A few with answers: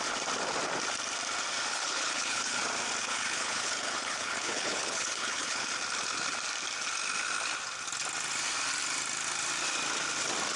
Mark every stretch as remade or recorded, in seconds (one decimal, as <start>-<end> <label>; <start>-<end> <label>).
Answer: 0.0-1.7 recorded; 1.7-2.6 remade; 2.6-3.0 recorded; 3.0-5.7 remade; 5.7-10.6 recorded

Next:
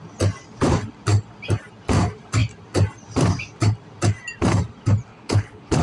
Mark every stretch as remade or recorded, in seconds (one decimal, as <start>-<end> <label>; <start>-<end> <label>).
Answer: 0.0-5.1 recorded; 5.1-5.8 remade

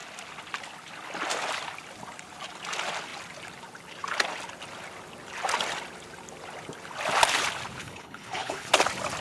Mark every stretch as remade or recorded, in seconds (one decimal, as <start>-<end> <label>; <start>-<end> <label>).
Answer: 0.0-7.8 recorded; 7.8-8.7 remade; 8.7-9.2 recorded

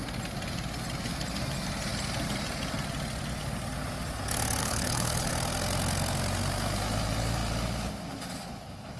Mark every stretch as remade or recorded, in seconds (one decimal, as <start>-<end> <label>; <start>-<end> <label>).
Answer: 0.0-4.6 recorded; 4.6-5.3 remade; 5.3-9.0 recorded

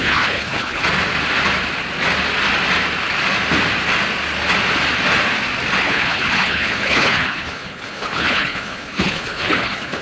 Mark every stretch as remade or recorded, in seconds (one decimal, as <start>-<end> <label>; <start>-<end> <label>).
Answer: 0.0-0.8 remade; 0.8-5.8 recorded; 5.8-10.0 remade

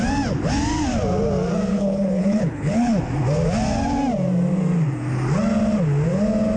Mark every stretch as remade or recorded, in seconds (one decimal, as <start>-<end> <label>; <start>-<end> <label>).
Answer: 0.0-1.7 recorded; 1.7-3.0 remade; 3.0-6.6 recorded

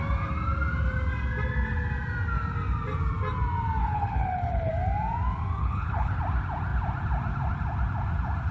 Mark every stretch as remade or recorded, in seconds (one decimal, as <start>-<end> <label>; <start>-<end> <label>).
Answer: 0.0-3.8 recorded; 3.8-4.7 remade; 4.7-5.6 recorded; 5.6-6.2 remade; 6.2-8.5 recorded

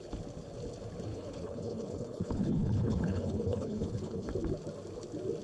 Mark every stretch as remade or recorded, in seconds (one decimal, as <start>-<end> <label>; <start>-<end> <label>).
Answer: 0.0-1.1 recorded; 1.1-4.3 remade; 4.3-5.4 recorded